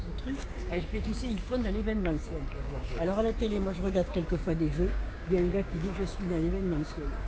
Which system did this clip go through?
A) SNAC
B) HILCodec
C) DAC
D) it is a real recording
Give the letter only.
C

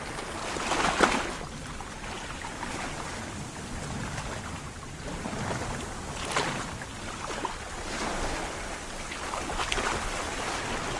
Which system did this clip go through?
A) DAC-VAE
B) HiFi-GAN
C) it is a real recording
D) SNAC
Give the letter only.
C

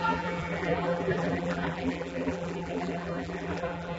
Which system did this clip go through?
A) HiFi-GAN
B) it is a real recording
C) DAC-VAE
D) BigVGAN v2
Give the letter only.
D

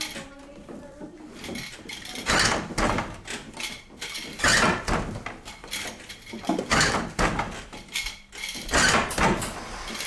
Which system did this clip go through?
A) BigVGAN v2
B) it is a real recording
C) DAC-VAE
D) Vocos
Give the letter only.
B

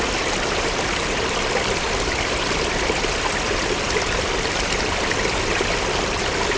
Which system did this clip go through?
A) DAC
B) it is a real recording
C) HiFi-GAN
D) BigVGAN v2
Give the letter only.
B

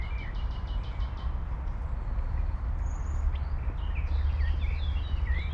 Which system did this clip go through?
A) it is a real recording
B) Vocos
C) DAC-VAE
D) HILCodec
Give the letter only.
A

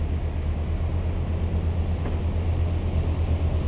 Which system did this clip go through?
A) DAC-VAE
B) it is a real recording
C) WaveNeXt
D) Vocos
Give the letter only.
B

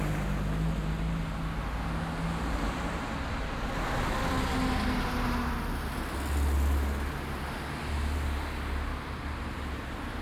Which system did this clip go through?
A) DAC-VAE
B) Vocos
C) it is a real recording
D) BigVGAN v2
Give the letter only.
C